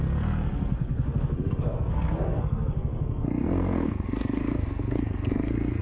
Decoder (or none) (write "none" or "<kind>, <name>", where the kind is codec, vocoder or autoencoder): codec, SNAC